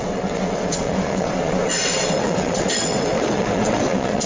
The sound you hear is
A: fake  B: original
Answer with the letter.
A